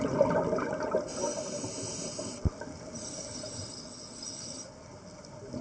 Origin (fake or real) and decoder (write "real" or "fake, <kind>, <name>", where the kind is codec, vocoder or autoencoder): real